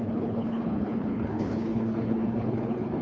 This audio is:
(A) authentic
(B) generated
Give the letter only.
B